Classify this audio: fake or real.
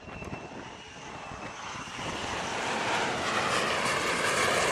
fake